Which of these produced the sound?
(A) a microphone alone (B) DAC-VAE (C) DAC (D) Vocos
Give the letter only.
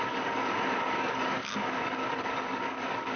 C